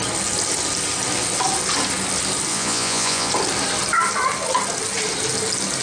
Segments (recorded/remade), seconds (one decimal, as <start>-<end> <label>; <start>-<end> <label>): 0.0-2.5 recorded; 2.5-3.3 remade; 3.3-5.8 recorded